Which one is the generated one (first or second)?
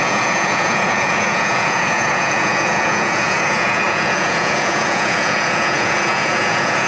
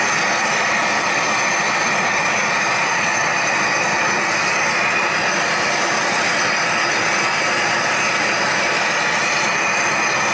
first